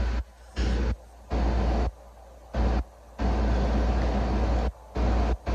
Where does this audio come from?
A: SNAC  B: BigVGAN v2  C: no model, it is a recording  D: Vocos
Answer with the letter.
C